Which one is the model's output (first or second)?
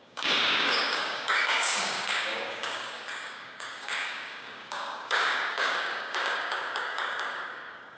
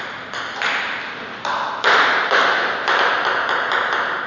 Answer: first